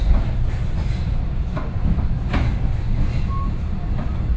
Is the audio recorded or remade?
recorded